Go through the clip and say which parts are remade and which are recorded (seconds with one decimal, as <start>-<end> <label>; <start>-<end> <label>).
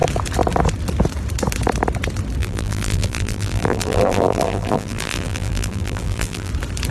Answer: 0.0-2.4 recorded; 2.4-6.5 remade; 6.5-6.9 recorded